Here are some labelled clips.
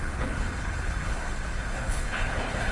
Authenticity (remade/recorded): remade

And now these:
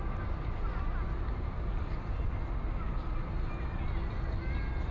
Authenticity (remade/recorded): recorded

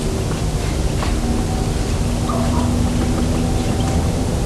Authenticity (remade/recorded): recorded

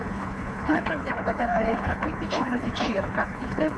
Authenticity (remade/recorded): remade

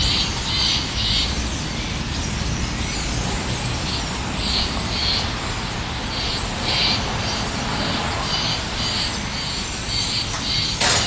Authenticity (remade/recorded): recorded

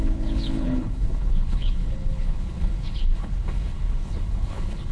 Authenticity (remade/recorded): remade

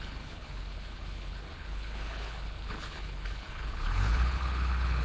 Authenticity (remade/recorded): remade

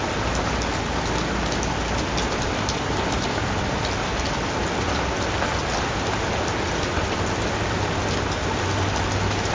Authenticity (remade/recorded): recorded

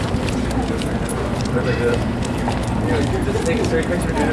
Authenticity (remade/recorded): recorded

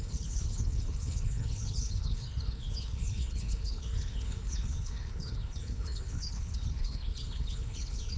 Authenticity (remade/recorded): remade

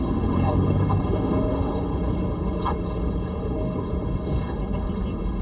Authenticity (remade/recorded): remade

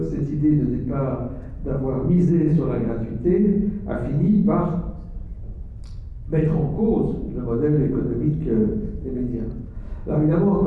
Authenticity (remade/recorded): recorded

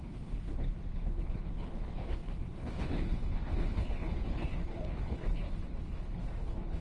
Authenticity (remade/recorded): remade